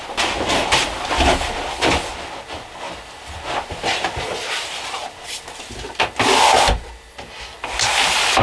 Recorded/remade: recorded